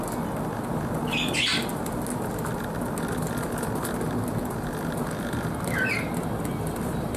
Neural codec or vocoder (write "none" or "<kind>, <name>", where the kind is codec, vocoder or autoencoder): none